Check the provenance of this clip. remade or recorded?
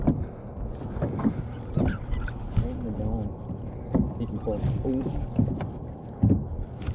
recorded